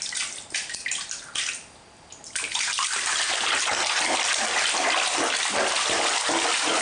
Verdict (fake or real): real